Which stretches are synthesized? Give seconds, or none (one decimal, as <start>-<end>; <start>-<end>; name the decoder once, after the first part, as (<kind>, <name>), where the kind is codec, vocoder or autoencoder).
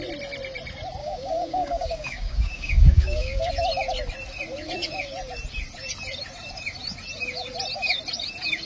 1.0-3.5 (codec, DAC)